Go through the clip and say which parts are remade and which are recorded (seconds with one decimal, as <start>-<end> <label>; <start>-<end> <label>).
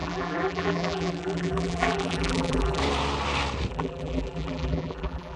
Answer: 0.0-2.8 remade; 2.8-3.7 recorded; 3.7-5.4 remade